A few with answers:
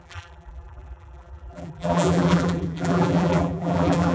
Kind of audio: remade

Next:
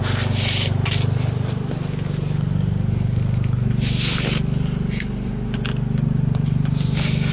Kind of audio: recorded